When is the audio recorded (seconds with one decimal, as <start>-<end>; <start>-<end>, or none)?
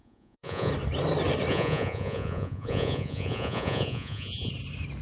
0.7-1.5; 4.5-5.0